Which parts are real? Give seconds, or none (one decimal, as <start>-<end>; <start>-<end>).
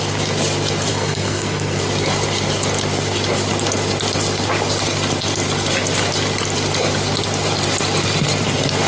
0.0-0.9; 1.8-8.9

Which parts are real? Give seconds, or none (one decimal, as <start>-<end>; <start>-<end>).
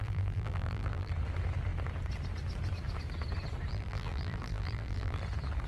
1.1-3.7; 5.2-5.7